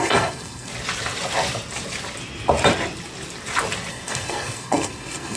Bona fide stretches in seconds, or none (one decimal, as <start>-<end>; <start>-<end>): 0.7-3.9